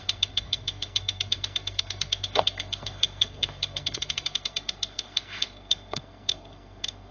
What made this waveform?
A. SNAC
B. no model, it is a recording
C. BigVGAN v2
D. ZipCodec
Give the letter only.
A